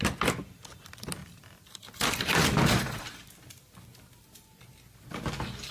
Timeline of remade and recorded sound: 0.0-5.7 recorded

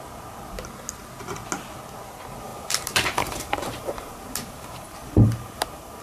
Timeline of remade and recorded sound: 0.0-2.5 recorded; 2.5-6.0 remade

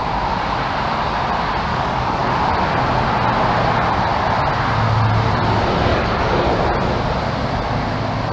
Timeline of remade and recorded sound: 0.0-1.7 recorded; 1.7-2.3 remade; 2.3-5.9 recorded; 5.9-6.5 remade; 6.5-8.3 recorded

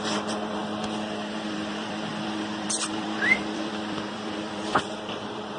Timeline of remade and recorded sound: 0.0-5.6 remade

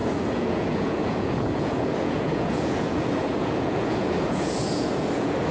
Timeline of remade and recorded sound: 0.0-5.5 remade

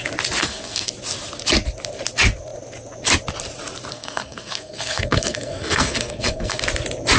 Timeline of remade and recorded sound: 0.0-0.4 recorded; 0.4-0.9 remade; 0.9-3.9 recorded; 3.9-6.6 remade; 6.6-7.2 recorded

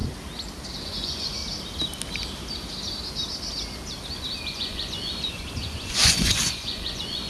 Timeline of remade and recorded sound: 0.0-0.8 recorded; 0.8-1.4 remade; 1.4-4.5 recorded; 4.5-7.3 remade

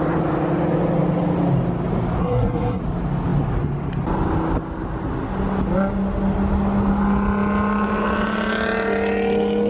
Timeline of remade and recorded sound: 0.0-2.2 recorded; 2.2-2.8 remade; 2.8-9.7 recorded